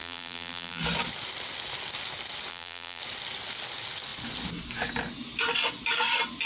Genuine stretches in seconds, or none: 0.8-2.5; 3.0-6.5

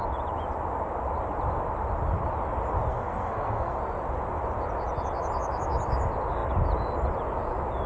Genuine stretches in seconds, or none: 0.0-2.9; 3.8-7.9

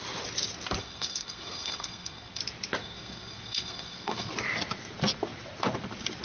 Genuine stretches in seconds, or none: 0.0-0.8; 2.4-2.8; 4.3-6.2

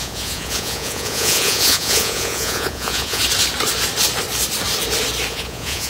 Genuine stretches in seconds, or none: 3.2-5.3

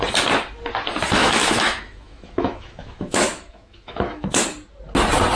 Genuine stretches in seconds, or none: 0.0-1.2; 4.4-5.4

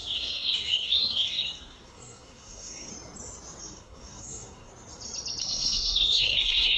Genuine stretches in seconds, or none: 2.9-3.6; 4.7-5.4

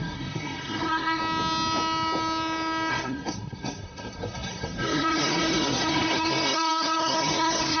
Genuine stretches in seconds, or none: 1.2-2.9